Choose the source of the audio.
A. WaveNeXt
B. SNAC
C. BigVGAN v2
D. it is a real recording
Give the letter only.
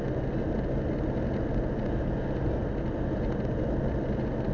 D